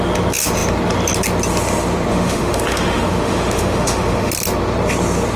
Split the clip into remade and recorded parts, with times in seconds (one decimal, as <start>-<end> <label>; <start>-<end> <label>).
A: 0.0-2.1 recorded; 2.1-4.3 remade; 4.3-5.4 recorded